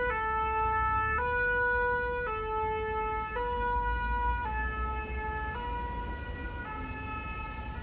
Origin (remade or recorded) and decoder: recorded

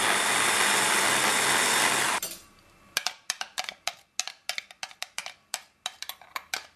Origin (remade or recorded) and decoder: recorded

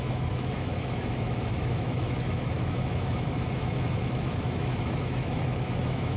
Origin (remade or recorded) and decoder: remade, autoencoder, DAC-VAE